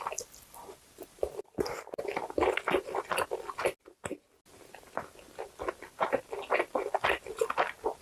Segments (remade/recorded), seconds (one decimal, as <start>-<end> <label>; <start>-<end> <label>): 0.0-2.2 remade; 2.2-6.3 recorded; 6.3-8.0 remade